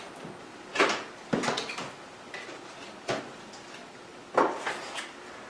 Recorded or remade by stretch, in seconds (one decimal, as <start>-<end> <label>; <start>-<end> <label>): 0.0-0.7 remade; 0.7-4.0 recorded; 4.0-5.5 remade